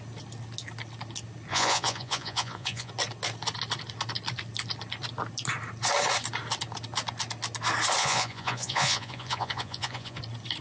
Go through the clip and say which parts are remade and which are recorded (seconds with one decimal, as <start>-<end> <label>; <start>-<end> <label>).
0.0-1.5 recorded; 1.5-2.9 remade; 2.9-8.0 recorded; 8.0-10.2 remade; 10.2-10.6 recorded